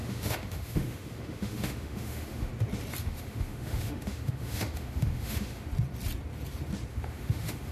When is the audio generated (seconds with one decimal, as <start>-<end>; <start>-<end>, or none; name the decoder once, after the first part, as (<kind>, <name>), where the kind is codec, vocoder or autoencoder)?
0.0-2.5 (autoencoder, DAC-VAE); 3.0-5.7; 6.9-7.7